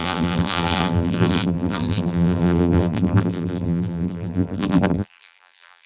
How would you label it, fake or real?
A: fake